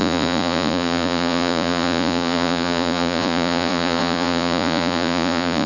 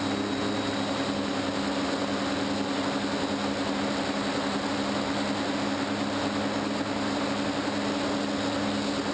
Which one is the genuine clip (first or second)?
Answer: second